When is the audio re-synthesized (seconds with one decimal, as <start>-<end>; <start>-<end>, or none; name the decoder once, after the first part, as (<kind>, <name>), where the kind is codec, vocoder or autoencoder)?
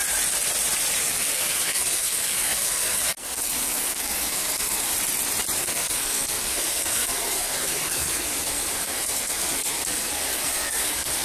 1.0-4.9 (codec, SNAC); 5.6-11.2